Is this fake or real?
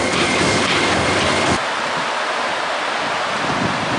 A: real